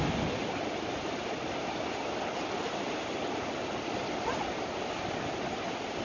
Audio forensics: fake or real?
real